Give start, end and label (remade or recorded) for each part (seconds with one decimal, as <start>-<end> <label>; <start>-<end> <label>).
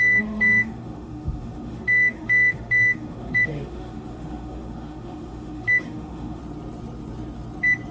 0.0-6.4 remade; 6.4-7.9 recorded